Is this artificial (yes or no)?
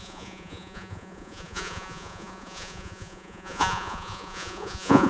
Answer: yes